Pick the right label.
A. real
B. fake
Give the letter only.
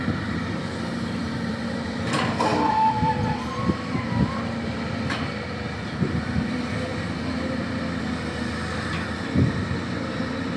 B